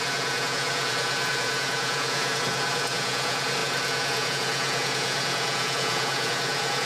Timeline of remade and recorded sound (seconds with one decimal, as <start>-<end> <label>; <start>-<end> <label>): 0.0-6.9 remade